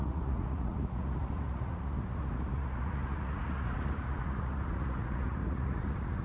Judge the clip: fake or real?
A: fake